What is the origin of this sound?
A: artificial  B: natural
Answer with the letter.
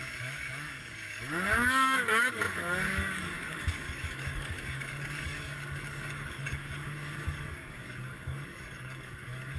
A